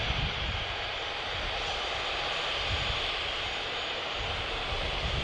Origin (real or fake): fake